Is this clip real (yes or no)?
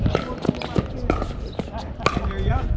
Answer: yes